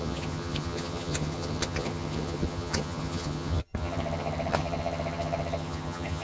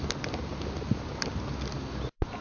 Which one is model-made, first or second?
first